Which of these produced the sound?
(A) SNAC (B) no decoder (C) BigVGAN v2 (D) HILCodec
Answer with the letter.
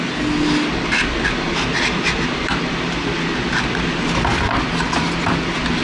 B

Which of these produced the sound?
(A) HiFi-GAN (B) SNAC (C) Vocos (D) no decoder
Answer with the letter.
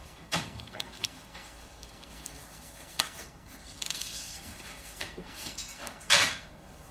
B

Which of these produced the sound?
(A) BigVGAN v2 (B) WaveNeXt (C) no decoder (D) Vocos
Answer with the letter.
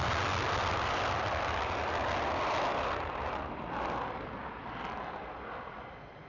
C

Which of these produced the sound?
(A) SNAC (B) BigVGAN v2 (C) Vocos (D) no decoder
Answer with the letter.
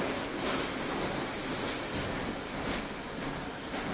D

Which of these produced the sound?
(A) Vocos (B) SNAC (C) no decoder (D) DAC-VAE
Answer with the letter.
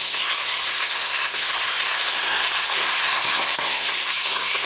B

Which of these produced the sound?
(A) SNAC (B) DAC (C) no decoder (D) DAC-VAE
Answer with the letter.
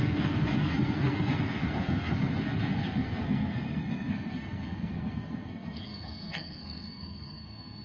A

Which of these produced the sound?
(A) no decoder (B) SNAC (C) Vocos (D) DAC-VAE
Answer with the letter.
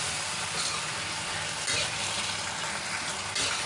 A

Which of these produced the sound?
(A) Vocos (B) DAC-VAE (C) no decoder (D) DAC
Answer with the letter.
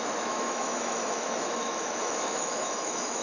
B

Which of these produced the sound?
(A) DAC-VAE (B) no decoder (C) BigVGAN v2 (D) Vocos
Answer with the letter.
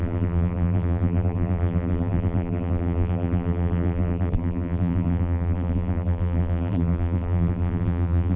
C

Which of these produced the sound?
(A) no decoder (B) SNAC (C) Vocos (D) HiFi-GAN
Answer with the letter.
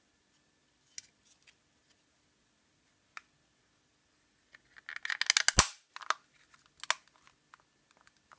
A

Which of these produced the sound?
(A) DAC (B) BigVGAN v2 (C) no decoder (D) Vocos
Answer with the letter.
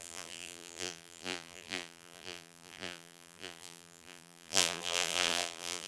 B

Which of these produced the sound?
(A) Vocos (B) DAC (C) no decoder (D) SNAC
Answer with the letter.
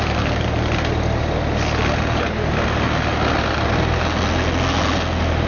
C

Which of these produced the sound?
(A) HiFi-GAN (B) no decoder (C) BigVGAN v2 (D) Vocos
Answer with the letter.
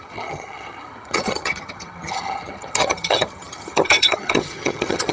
A